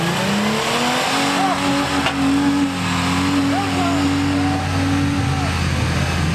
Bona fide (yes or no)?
yes